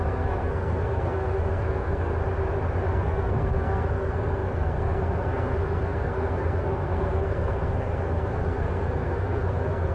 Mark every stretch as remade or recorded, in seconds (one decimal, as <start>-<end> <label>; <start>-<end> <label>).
0.0-2.1 remade; 2.1-2.9 recorded; 2.9-9.9 remade